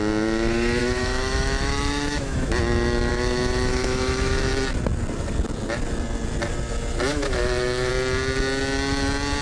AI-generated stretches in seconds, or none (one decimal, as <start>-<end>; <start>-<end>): 0.8-2.5; 3.1-4.5; 7.1-7.9